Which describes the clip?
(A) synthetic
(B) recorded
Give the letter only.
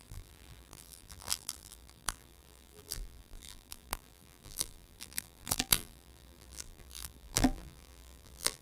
A